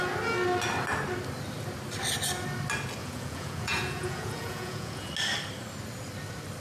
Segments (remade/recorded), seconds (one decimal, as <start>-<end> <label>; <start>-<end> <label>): 0.0-3.0 recorded; 3.0-5.1 remade; 5.1-6.6 recorded